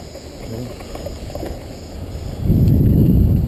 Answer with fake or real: real